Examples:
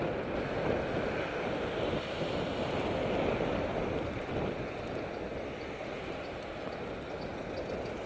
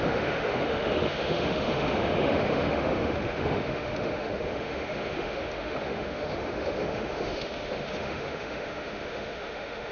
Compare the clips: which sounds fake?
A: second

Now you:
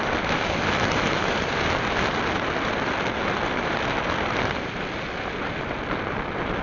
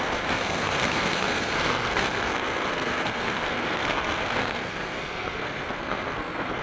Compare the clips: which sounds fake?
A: second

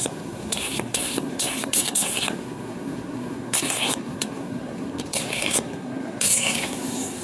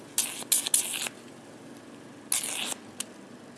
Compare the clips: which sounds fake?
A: first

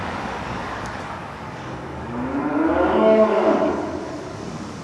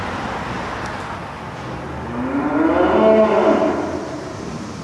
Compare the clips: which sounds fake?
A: first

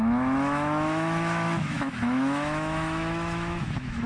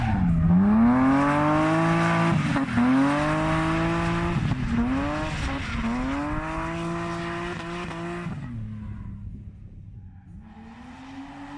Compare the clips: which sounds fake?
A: first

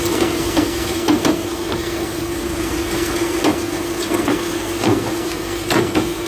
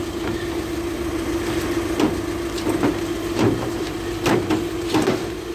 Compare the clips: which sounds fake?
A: first